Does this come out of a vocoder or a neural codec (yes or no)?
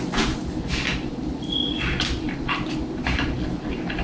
no